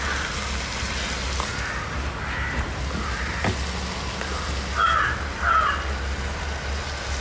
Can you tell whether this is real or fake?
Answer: real